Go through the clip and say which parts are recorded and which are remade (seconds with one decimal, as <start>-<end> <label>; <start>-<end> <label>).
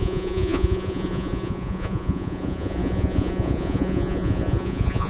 0.0-5.1 remade